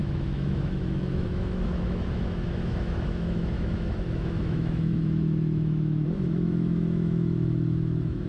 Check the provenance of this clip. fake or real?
fake